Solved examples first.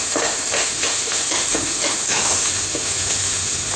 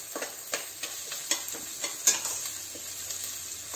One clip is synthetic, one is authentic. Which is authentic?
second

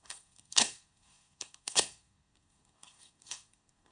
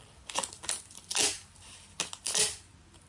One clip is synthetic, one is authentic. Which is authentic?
second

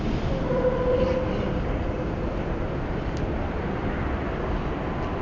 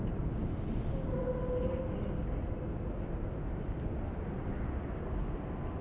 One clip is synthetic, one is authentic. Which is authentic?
second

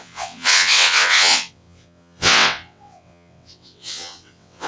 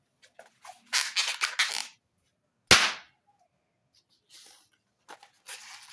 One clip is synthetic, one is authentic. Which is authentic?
second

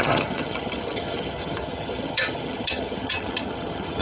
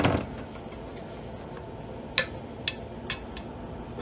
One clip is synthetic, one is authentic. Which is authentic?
second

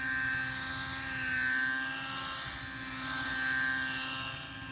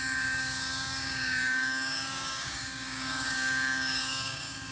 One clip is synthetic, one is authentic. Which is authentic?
first